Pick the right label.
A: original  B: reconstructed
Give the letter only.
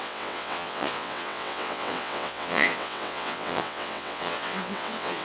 B